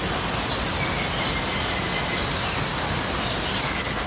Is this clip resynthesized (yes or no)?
no